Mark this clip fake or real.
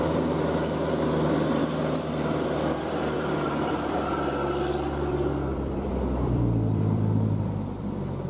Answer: fake